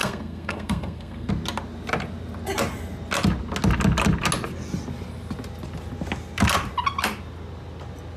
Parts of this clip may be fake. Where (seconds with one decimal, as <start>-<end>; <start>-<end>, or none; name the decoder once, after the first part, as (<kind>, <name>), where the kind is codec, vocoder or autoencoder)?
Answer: 0.0-1.3 (codec, SNAC)